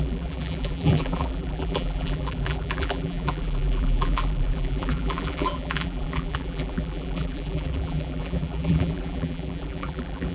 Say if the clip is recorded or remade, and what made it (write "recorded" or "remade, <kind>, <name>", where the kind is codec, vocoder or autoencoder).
remade, vocoder, BigVGAN v2